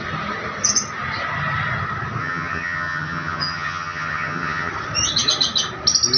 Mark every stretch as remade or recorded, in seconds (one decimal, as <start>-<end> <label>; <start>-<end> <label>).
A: 0.0-2.2 recorded; 2.2-4.7 remade; 4.7-6.2 recorded